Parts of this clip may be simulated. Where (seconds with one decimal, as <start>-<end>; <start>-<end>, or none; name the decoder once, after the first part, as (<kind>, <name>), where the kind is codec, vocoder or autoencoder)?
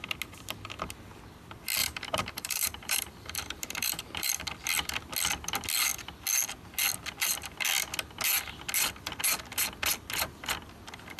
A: 1.8-4.3 (vocoder, BigVGAN v2)